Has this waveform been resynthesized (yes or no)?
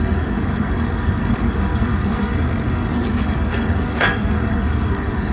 yes